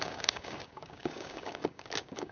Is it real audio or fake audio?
fake